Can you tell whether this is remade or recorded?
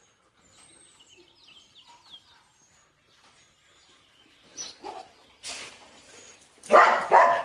recorded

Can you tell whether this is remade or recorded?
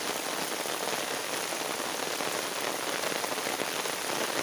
recorded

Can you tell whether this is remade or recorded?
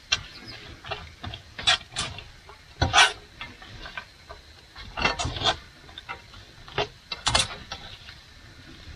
recorded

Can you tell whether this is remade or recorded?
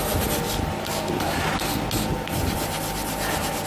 recorded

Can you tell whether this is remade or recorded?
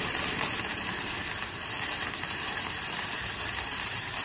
remade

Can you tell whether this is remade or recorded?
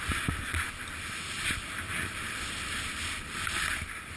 recorded